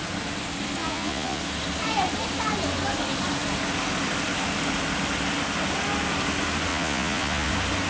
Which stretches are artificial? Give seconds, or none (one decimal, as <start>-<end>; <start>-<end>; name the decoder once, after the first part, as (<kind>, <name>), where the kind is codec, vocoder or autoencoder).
0.8-1.4 (vocoder, Vocos); 6.7-7.5